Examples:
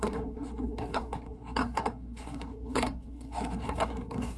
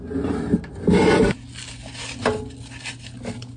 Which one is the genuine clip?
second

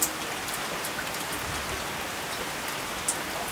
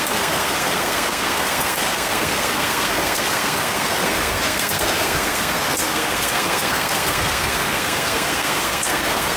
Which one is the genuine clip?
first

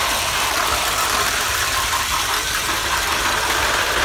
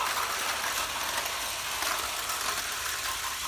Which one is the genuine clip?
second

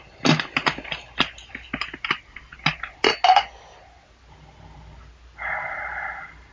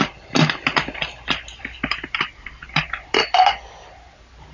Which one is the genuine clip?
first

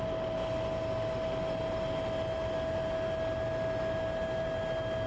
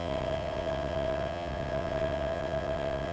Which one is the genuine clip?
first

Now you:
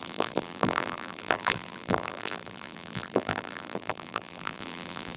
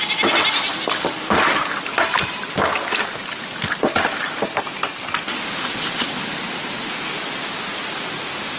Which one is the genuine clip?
second